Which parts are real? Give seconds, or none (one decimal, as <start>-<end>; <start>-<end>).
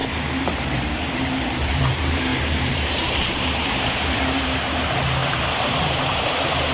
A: 0.0-1.1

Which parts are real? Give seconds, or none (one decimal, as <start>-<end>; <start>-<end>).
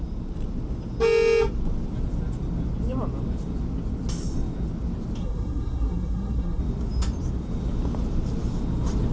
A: 0.0-5.2; 6.6-9.1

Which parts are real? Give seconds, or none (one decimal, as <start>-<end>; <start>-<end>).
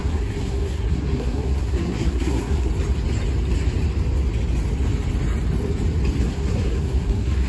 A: 2.7-6.2